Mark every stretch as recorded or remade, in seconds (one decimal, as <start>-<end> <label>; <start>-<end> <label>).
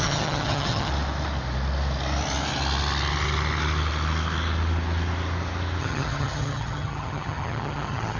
0.0-0.9 remade; 0.9-5.8 recorded; 5.8-8.2 remade